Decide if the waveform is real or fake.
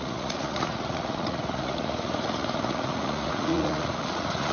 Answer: fake